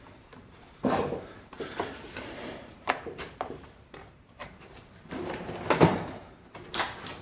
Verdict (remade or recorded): remade